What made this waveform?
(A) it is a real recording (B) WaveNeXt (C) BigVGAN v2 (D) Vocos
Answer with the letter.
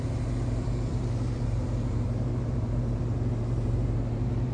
C